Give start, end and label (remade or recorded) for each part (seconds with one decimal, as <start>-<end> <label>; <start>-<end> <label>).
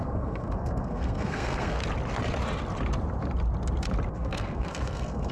0.0-1.8 remade; 1.8-4.1 recorded; 4.1-5.3 remade